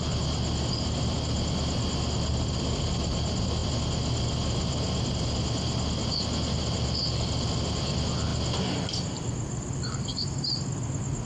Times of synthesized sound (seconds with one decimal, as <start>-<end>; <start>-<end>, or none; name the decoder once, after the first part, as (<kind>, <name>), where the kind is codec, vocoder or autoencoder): none

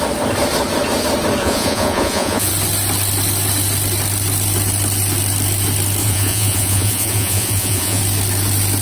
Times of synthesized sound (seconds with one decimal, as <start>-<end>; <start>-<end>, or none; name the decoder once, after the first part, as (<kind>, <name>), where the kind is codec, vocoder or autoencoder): 1.4-2.5 (vocoder, Vocos); 6.0-8.0